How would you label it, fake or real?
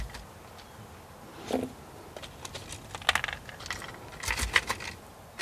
real